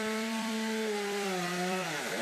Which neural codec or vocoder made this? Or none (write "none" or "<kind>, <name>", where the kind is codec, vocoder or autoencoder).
vocoder, BigVGAN v2